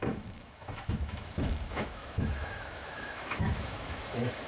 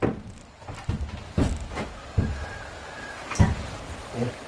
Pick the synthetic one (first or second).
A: first